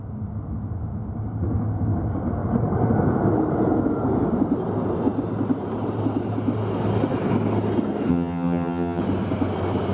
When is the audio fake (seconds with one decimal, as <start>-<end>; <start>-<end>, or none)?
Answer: 8.1-9.0